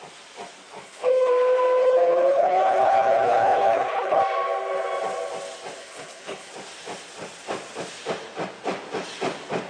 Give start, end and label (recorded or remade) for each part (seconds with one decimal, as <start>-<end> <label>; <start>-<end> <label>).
0.0-0.8 recorded; 0.8-1.3 remade; 1.3-1.8 recorded; 1.8-4.2 remade; 4.2-5.8 recorded; 5.8-6.5 remade; 6.5-9.7 recorded

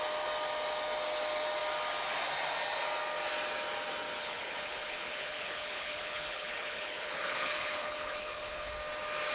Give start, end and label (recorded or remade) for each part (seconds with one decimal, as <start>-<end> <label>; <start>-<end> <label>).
0.0-4.2 recorded; 4.2-8.7 remade; 8.7-9.3 recorded

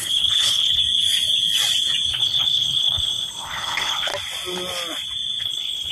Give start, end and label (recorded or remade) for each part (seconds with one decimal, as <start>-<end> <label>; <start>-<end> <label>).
0.0-0.8 remade; 0.8-2.1 recorded; 2.1-4.1 remade; 4.1-5.4 recorded; 5.4-5.9 remade

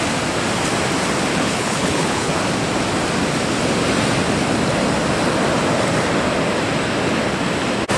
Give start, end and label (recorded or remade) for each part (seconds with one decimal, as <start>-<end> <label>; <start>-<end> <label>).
0.0-1.3 recorded; 1.3-2.3 remade; 2.3-8.0 recorded